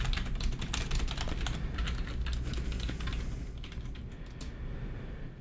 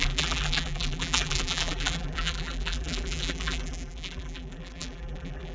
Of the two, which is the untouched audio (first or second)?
first